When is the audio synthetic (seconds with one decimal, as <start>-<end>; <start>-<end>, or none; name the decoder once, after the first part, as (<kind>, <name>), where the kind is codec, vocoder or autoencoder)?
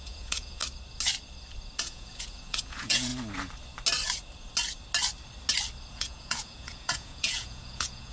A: 0.0-0.6 (vocoder, Vocos); 1.8-3.1; 5.9-8.1